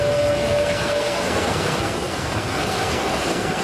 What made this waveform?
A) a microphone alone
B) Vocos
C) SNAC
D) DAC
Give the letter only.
C